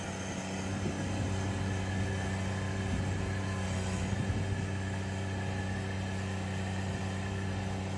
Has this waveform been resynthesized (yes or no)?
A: no